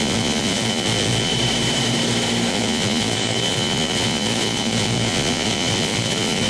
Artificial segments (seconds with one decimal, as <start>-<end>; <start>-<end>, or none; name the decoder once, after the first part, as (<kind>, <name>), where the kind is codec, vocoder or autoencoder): 0.0-1.3 (vocoder, Vocos); 2.5-6.5